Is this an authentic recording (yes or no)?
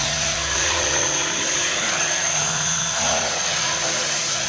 no